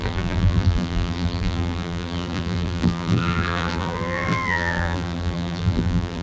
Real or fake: fake